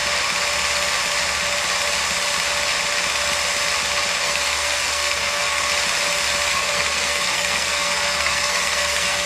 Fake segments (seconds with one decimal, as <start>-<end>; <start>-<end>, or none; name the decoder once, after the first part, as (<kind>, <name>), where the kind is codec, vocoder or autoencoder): 4.2-5.7 (codec, SNAC); 6.5-9.3